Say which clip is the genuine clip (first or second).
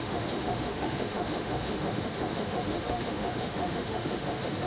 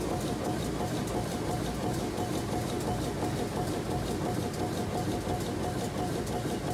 second